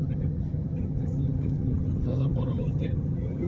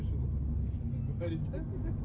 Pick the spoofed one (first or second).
first